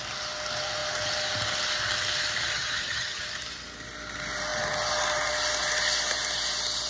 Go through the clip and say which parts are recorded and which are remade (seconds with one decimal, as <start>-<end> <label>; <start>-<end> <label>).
0.0-2.5 recorded; 2.5-3.2 remade; 3.2-6.9 recorded